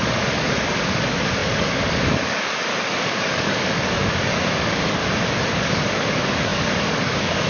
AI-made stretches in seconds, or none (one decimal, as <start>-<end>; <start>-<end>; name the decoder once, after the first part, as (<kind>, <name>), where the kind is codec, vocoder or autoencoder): 0.0-5.0 (codec, DAC); 5.5-7.5